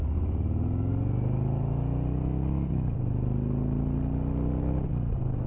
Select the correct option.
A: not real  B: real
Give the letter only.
B